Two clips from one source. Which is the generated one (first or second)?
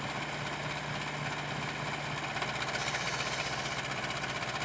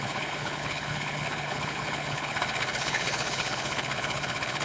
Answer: second